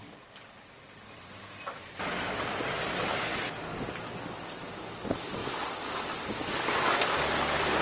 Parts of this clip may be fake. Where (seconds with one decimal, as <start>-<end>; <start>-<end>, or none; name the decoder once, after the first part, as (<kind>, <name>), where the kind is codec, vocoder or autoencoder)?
none

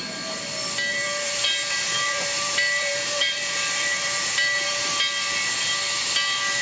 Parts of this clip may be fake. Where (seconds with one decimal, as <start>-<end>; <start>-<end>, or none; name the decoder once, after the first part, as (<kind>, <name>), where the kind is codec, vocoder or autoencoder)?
0.9-4.9 (vocoder, BigVGAN v2)

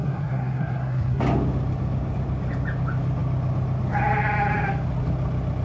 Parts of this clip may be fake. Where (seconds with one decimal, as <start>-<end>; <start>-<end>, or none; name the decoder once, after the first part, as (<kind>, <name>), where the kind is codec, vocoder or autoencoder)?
0.0-1.2 (codec, SNAC)

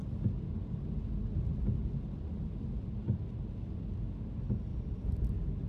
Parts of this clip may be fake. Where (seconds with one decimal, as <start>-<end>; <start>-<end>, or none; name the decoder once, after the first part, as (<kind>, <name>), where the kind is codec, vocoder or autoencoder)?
4.7-5.3 (vocoder, BigVGAN v2)

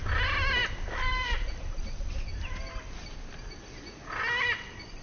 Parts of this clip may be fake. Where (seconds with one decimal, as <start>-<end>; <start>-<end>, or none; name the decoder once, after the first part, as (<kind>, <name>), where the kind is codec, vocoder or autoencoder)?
none

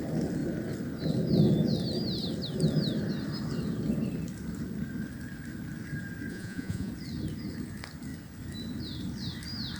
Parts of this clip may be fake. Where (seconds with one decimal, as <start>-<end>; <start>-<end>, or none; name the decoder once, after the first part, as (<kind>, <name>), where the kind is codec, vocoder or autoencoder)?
6.3-6.9 (vocoder, Vocos)

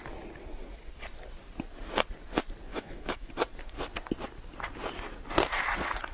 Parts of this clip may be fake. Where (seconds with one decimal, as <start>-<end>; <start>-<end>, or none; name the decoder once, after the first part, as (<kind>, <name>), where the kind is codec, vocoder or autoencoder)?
2.7-3.3 (autoencoder, DAC-VAE)